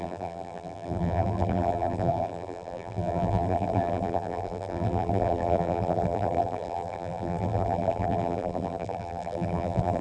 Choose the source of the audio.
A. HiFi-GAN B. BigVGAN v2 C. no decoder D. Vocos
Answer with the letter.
B